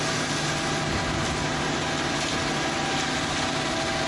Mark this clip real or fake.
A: real